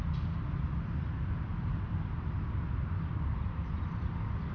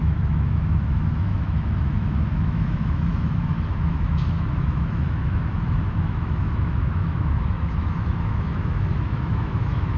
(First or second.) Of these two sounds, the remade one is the second